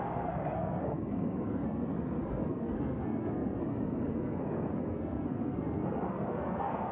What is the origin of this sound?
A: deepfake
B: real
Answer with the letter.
A